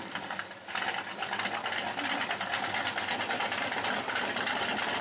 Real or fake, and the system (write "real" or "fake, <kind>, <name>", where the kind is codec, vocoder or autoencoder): real